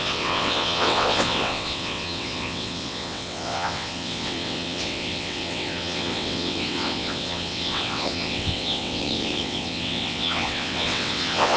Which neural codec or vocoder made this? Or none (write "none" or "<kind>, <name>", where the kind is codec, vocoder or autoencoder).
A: vocoder, WaveNeXt